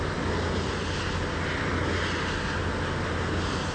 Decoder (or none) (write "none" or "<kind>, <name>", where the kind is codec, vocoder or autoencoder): none